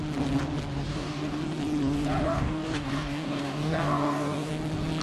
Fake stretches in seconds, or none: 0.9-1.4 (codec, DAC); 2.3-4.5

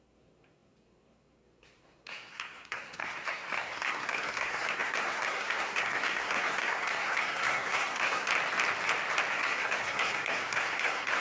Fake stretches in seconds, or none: 0.0-8.3 (codec, SNAC); 9.3-11.2